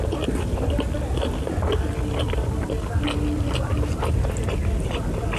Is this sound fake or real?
real